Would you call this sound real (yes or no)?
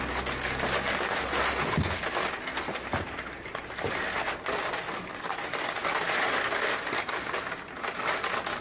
yes